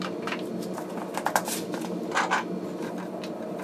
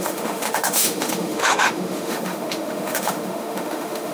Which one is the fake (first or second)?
second